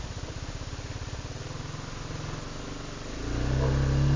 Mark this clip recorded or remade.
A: recorded